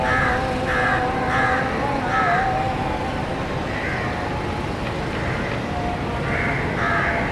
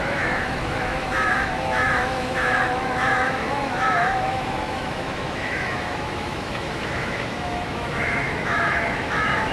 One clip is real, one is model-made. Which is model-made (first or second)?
second